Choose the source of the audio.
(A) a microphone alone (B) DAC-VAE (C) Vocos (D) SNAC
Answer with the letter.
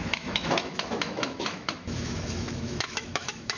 B